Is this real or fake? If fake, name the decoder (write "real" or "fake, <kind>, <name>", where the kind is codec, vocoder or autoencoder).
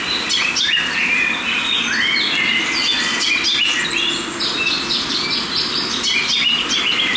real